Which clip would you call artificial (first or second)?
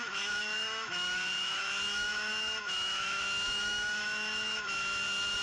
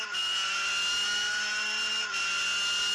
first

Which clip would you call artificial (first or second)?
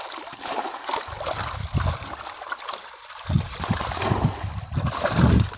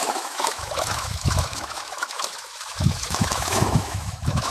second